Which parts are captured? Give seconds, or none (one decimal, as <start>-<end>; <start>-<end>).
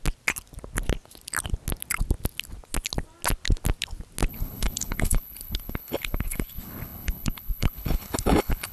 0.0-4.3